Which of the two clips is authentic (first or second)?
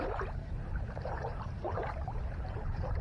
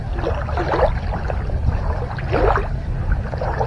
second